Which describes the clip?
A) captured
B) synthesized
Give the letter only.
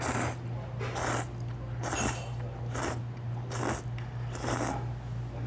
A